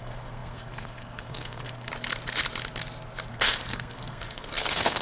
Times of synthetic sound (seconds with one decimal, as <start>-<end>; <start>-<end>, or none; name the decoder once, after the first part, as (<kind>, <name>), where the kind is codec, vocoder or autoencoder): 0.0-1.9 (codec, SNAC); 3.3-5.0

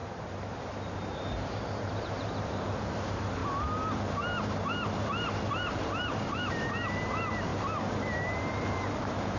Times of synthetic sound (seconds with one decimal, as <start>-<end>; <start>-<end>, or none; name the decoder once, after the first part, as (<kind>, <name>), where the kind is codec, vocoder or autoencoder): 0.0-3.4 (vocoder, BigVGAN v2); 4.0-9.4

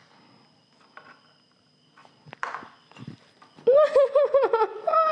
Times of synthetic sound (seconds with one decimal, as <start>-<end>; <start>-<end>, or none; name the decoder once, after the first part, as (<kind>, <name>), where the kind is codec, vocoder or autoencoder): 2.0-2.8 (vocoder, BigVGAN v2)